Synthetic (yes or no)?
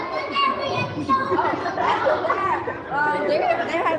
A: no